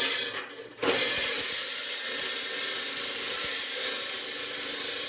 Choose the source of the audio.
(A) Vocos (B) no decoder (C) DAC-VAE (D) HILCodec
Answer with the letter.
B